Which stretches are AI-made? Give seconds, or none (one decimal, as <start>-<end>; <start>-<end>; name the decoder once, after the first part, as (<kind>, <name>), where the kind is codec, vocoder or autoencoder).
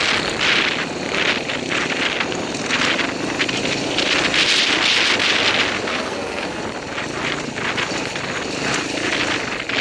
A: 5.9-6.6 (codec, SNAC)